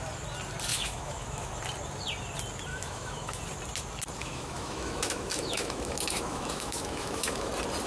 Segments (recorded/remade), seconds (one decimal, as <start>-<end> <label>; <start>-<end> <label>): 0.0-0.7 recorded; 0.7-1.5 remade; 1.5-2.7 recorded; 2.7-3.4 remade; 3.4-4.2 recorded; 4.2-7.5 remade; 7.5-7.9 recorded